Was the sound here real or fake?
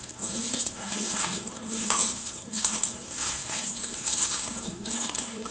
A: fake